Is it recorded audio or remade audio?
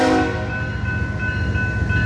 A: recorded